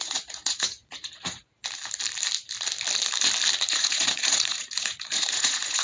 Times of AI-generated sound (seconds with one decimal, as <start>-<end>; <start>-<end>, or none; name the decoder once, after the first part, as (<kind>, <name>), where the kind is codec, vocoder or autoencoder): 0.0-1.6 (vocoder, Vocos); 3.7-5.8